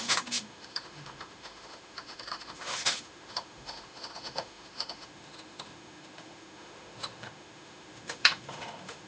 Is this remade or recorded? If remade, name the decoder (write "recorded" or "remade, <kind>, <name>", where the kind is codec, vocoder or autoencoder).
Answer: remade, autoencoder, DAC-VAE